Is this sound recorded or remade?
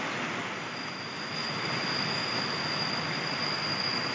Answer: recorded